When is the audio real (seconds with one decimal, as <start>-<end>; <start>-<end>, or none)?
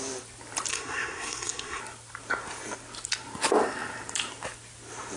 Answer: 0.0-0.7; 1.8-5.2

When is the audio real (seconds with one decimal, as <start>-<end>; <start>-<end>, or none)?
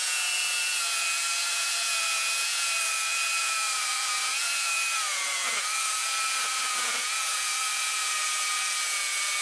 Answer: none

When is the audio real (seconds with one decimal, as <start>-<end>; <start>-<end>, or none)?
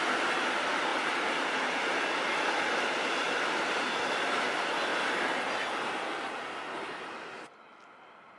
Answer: 0.0-8.4